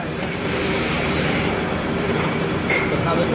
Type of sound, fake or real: fake